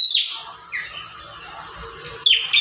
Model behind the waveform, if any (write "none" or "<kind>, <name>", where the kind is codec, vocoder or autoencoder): none